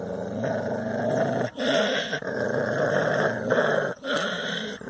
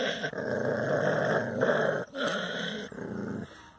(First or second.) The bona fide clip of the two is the second